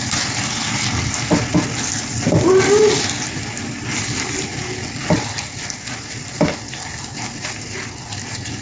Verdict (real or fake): real